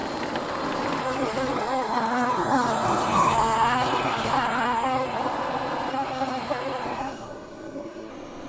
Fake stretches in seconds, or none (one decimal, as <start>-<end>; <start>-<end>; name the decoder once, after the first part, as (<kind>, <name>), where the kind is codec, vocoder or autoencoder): 1.0-5.2 (codec, SNAC); 5.9-8.1